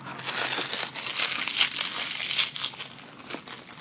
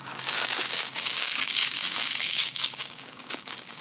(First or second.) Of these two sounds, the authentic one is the first